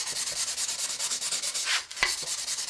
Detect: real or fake real